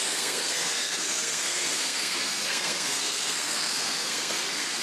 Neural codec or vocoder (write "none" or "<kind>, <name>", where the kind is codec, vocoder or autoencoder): codec, SNAC